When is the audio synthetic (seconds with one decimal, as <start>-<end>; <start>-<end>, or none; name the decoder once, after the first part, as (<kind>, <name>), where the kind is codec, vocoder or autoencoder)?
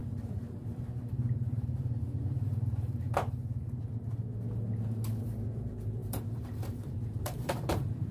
0.0-3.4 (vocoder, BigVGAN v2); 5.2-8.1